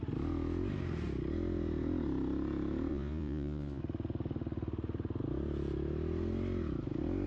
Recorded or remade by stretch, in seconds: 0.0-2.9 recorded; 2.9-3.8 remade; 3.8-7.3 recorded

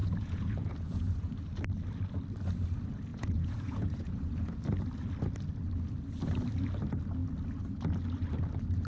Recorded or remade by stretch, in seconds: 0.0-1.3 remade; 1.3-3.1 recorded; 3.1-4.6 remade; 4.6-8.9 recorded

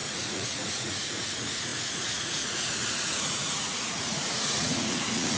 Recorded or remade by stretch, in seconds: 0.0-5.4 remade